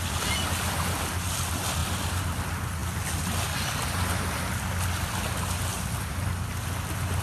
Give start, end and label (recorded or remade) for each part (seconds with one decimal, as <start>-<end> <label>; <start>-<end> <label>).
0.0-1.8 recorded; 1.8-2.4 remade; 2.4-7.2 recorded